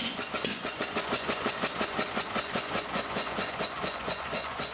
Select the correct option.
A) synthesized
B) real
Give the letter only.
A